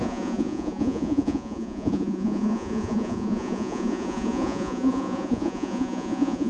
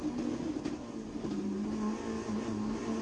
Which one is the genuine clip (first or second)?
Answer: second